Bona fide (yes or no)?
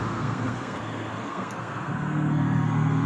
no